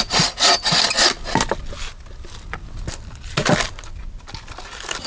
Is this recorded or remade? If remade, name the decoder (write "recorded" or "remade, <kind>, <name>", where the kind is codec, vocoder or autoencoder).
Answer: recorded